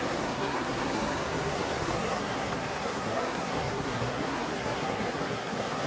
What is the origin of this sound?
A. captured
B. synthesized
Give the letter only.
B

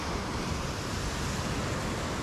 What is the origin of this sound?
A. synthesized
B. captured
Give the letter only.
B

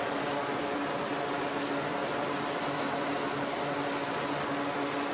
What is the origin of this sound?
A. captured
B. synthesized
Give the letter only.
A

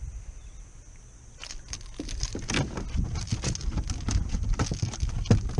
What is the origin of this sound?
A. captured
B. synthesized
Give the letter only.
A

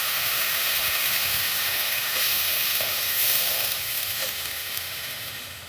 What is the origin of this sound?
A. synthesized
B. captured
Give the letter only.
A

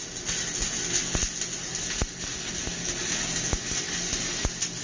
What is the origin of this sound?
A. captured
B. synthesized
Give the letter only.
A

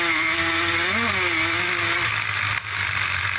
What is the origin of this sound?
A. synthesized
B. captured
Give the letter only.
B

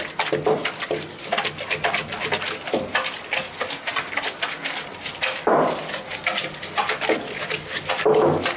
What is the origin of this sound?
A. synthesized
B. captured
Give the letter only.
B